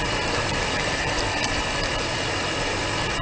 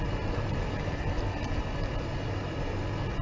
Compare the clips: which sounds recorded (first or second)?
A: second